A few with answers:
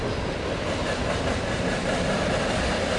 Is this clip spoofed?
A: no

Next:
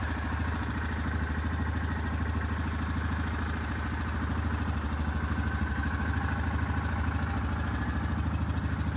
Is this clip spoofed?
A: no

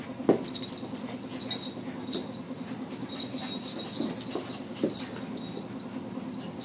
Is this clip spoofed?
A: no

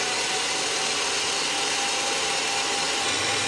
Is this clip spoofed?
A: no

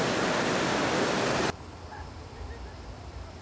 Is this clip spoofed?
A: no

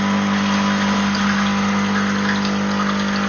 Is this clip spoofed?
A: no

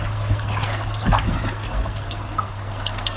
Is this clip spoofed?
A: yes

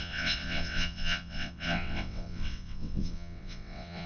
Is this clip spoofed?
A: yes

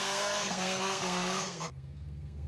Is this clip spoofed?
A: yes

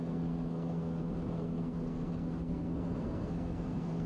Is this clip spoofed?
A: yes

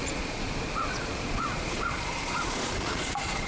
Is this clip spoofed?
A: yes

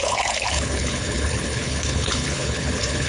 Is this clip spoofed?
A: yes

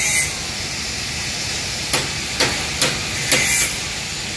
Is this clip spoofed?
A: no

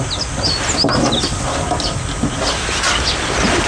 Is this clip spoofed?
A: no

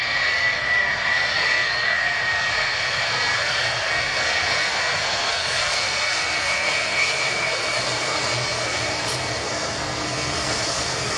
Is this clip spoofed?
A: yes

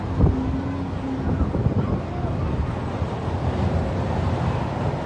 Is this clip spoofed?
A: no